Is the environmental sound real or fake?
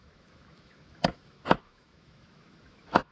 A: fake